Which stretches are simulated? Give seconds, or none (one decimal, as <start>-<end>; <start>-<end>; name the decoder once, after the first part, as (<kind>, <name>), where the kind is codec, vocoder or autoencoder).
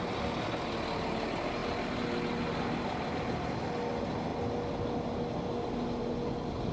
none